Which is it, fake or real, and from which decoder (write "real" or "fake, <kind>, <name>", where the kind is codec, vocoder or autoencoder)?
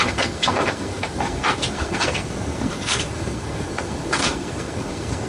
fake, codec, SNAC